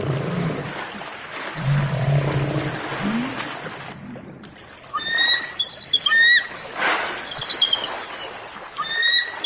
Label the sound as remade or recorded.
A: recorded